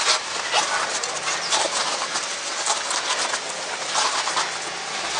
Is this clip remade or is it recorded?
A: recorded